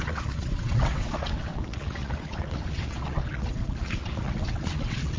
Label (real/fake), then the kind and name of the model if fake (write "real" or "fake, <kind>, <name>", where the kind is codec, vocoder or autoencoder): fake, vocoder, WaveNeXt